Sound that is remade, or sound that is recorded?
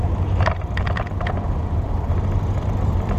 recorded